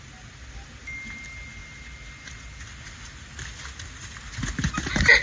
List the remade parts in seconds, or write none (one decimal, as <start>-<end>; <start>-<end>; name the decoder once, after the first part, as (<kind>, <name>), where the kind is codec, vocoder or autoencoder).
none